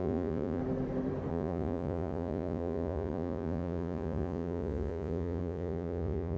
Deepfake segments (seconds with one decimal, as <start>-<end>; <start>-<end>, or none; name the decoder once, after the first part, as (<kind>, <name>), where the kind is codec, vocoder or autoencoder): 0.0-0.6 (vocoder, Vocos); 1.3-6.4